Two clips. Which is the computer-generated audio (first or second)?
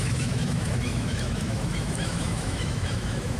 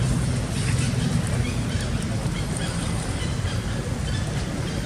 first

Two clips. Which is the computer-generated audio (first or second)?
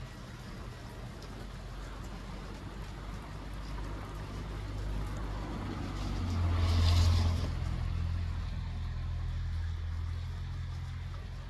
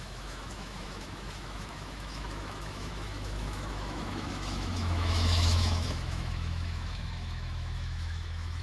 second